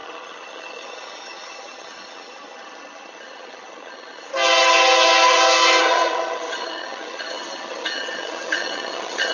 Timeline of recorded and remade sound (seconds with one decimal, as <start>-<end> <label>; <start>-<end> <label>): 0.0-4.3 remade; 4.3-5.8 recorded; 5.8-9.3 remade